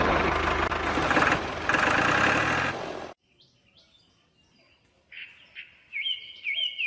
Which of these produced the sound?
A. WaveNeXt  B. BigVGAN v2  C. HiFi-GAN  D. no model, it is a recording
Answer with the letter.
D